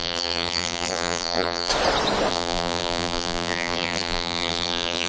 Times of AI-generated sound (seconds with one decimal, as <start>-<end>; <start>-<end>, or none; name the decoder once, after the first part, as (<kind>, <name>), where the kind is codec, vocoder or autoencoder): 0.0-1.7 (vocoder, BigVGAN v2); 2.3-5.1